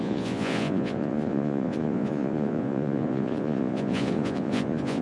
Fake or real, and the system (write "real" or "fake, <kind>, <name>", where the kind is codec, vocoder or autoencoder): fake, vocoder, Vocos